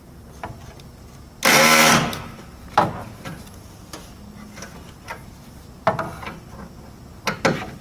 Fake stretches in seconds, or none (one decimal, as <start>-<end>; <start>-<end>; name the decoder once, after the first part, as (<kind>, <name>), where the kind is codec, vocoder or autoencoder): none